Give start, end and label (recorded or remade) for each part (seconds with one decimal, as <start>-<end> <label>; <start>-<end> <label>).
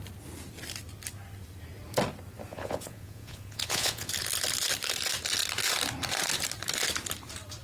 0.0-2.5 recorded; 2.5-4.1 remade; 4.1-7.6 recorded